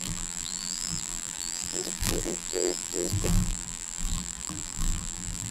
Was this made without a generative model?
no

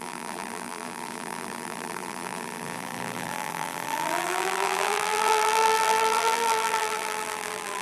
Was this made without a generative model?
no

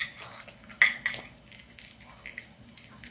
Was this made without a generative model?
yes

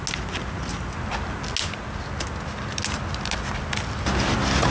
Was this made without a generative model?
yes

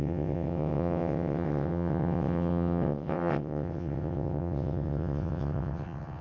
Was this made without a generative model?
no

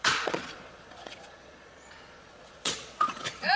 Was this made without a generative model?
no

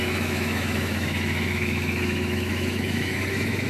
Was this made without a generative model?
no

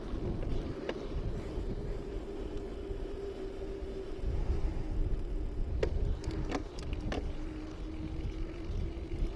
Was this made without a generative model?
yes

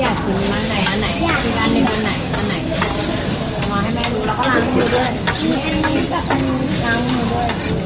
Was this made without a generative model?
yes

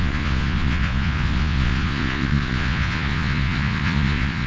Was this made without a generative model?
no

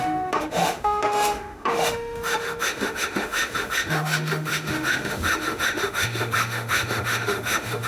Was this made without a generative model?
no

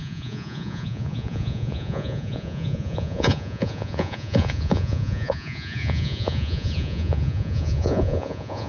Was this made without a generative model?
no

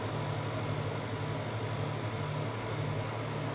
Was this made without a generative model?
yes